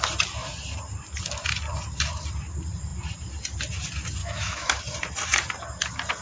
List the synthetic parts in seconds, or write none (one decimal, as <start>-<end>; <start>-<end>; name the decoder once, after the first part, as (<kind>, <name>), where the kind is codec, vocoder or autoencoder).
4.2-4.8 (autoencoder, DAC-VAE)